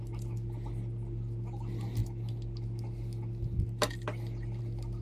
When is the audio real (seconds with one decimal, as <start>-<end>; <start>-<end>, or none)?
0.0-5.0